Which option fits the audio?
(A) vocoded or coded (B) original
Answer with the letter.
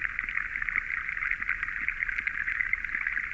B